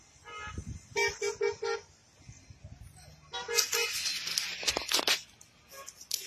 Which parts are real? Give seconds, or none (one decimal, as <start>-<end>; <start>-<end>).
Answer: 0.0-6.3